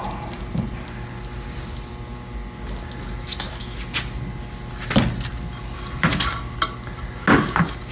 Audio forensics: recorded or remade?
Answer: recorded